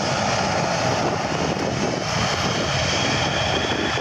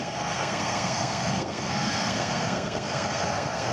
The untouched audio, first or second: first